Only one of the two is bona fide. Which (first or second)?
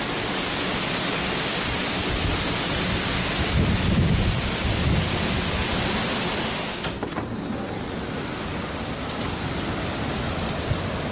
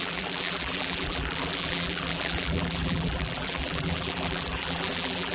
first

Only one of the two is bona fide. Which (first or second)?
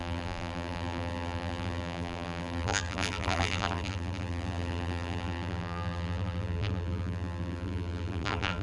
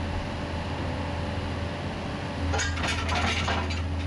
second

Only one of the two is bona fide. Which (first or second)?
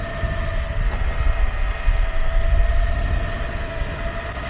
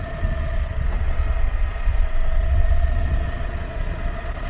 first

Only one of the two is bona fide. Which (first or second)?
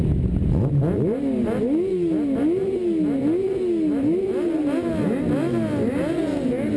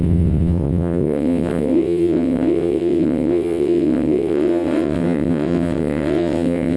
first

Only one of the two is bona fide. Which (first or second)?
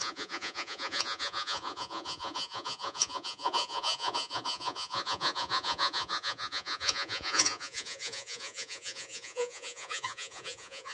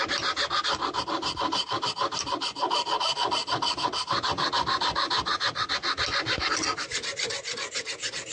second